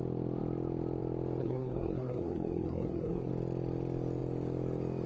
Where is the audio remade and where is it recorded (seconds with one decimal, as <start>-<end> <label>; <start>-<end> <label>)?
0.0-1.4 recorded; 1.4-3.3 remade; 3.3-5.1 recorded